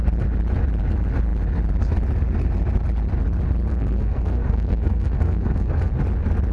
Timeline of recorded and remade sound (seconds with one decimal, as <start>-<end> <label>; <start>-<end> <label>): 0.0-3.7 recorded; 3.7-5.9 remade; 5.9-6.5 recorded